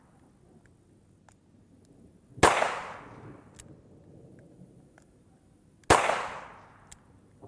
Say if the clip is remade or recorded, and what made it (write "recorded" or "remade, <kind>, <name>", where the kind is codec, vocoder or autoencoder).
recorded